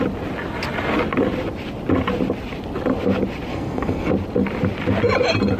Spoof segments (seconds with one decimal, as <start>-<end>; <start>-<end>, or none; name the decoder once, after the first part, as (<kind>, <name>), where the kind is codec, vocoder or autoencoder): 3.5-4.1 (codec, SNAC)